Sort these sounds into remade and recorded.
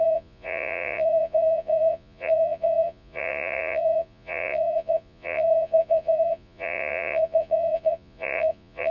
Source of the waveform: remade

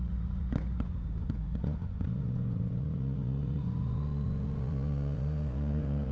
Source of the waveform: remade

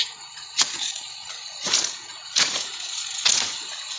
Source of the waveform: remade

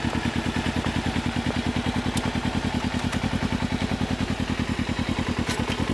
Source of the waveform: recorded